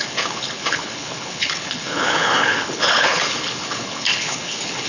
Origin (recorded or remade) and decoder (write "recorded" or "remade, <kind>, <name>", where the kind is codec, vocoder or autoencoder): remade, codec, HILCodec